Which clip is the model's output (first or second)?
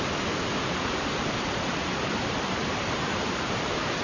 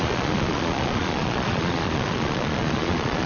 second